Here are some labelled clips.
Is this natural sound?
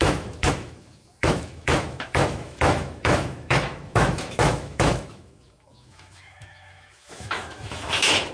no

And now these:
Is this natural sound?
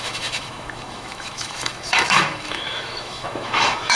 no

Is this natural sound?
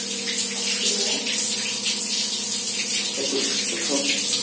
yes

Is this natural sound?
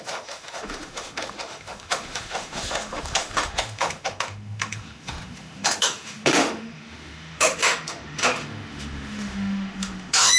no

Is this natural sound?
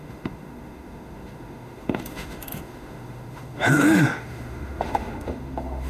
no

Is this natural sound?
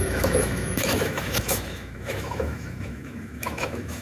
no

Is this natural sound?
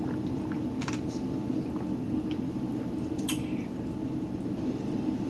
yes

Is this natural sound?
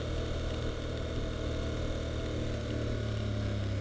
yes